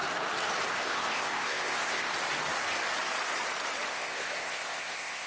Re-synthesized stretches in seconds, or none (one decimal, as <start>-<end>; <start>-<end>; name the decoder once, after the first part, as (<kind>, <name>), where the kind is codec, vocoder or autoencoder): 0.7-2.1 (codec, ZipCodec); 3.9-5.3